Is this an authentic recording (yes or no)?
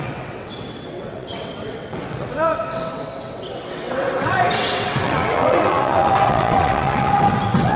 no